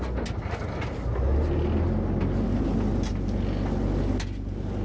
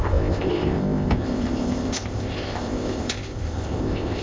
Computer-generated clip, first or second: second